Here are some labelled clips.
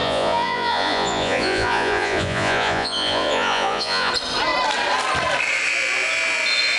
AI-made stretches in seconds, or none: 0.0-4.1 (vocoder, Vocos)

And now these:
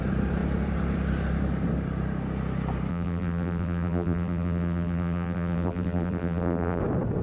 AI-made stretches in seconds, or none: 2.9-6.8 (vocoder, BigVGAN v2)